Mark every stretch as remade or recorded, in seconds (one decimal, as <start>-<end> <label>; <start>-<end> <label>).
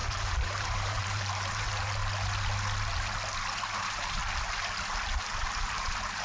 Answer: 0.0-2.0 remade; 2.0-3.8 recorded; 3.8-4.2 remade; 4.2-5.1 recorded; 5.1-6.2 remade